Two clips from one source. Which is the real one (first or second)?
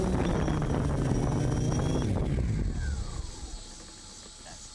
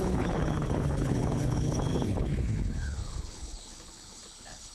first